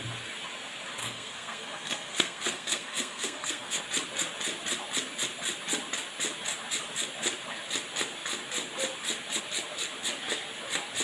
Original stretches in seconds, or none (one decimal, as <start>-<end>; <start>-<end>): 0.0-1.0; 3.8-11.0

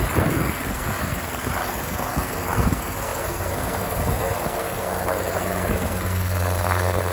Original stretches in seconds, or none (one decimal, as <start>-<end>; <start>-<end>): none

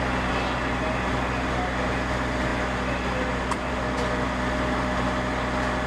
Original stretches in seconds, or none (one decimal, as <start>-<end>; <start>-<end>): 0.0-5.9

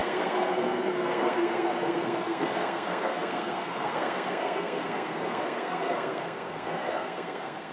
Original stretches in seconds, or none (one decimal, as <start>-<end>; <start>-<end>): none

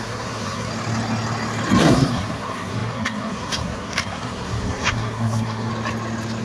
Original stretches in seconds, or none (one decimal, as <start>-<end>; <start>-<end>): 0.7-1.8; 5.7-6.4